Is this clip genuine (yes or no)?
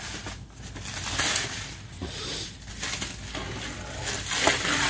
yes